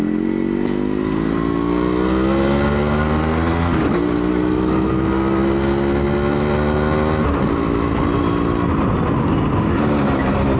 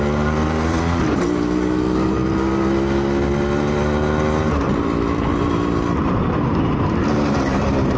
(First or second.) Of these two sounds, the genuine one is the first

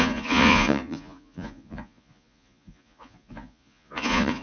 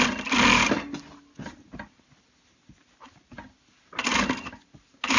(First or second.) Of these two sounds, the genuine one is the second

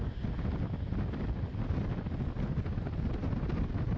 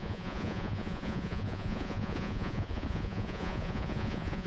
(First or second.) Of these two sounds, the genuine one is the first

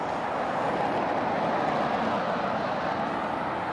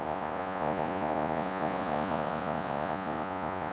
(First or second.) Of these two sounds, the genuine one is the first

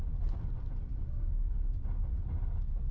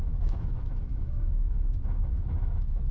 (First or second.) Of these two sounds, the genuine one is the first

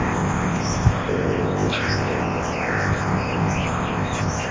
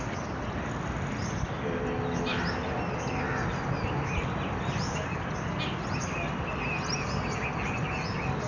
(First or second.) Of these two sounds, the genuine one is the second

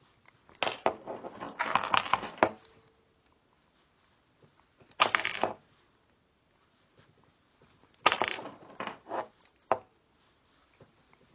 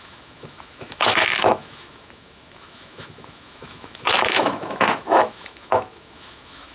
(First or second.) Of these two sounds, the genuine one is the first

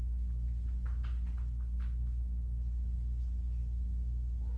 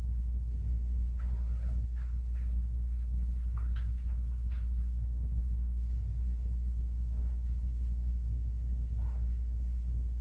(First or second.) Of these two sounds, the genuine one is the first